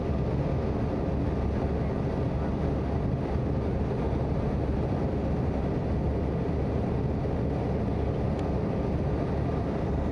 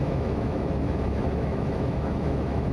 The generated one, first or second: second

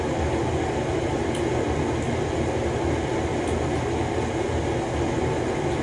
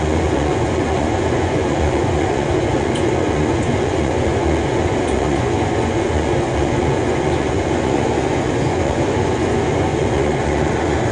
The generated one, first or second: second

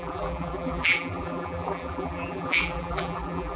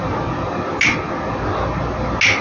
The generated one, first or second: first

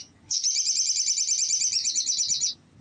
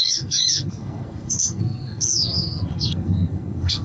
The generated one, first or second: second